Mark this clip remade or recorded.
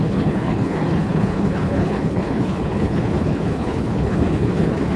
remade